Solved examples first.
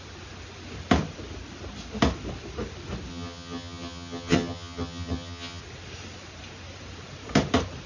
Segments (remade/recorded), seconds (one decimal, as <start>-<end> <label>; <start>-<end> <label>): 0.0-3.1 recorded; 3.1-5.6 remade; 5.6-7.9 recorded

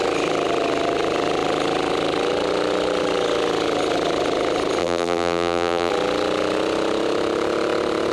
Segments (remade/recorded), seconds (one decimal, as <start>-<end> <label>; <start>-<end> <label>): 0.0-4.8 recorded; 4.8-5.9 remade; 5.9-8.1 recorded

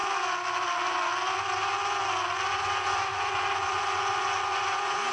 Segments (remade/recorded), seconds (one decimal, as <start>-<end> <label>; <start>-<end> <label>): 0.0-2.5 recorded; 2.5-5.1 remade